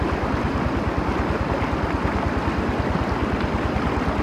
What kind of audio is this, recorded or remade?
recorded